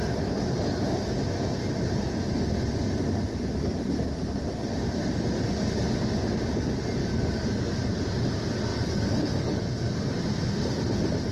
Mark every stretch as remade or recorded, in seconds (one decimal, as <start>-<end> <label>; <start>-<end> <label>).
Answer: 0.0-7.0 recorded; 7.0-7.7 remade; 7.7-8.7 recorded; 8.7-9.6 remade; 9.6-11.3 recorded

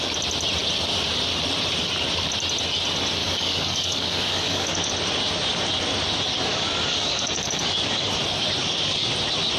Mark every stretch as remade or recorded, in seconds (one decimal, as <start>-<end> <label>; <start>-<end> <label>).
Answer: 0.0-3.2 recorded; 3.2-4.9 remade; 4.9-6.5 recorded; 6.5-8.2 remade; 8.2-8.6 recorded; 8.6-9.1 remade; 9.1-9.6 recorded

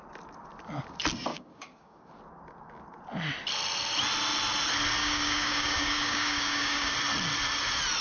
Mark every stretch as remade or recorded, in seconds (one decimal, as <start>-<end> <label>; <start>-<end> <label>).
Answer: 0.0-1.3 recorded; 1.3-2.1 remade; 2.1-5.0 recorded; 5.0-6.9 remade; 6.9-8.0 recorded

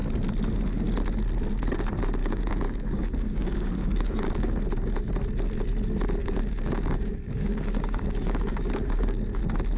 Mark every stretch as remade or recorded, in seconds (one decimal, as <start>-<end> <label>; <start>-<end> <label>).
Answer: 0.0-2.2 recorded; 2.2-4.3 remade; 4.3-6.2 recorded; 6.2-9.4 remade; 9.4-9.8 recorded